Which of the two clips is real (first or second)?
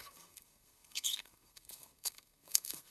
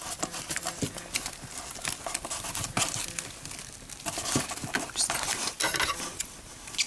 second